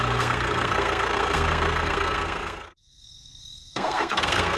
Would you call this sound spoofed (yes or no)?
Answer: yes